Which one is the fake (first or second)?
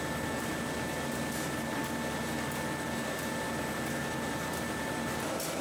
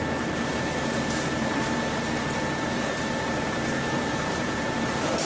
second